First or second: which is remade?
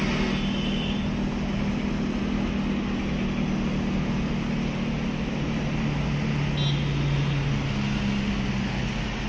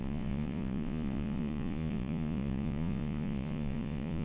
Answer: second